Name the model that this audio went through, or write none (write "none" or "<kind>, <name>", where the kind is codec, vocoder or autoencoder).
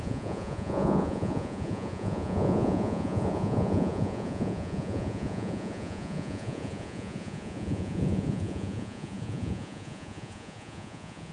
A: vocoder, Vocos